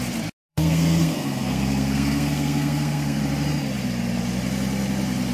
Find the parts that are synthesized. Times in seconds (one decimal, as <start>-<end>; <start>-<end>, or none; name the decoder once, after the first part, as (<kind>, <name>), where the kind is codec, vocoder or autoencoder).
0.5-3.2 (codec, SNAC)

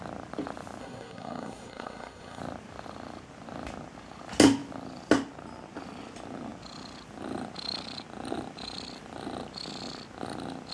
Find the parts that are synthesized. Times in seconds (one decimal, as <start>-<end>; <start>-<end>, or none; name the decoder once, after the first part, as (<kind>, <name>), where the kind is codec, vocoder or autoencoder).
0.8-2.4 (codec, SNAC)

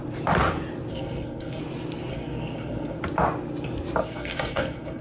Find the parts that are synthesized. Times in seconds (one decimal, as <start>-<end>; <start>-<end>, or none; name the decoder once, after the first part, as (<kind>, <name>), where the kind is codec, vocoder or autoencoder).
0.9-1.6 (codec, SNAC); 2.1-3.0; 4.0-5.0

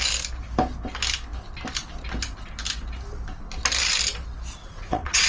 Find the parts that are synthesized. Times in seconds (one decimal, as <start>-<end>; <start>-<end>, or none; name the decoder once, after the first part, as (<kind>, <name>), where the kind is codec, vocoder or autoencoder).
4.6-5.3 (vocoder, WaveNeXt)

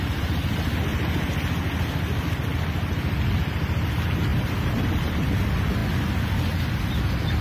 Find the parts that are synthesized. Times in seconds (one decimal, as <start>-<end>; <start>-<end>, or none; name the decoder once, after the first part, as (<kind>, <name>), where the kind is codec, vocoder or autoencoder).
4.3-5.3 (vocoder, BigVGAN v2)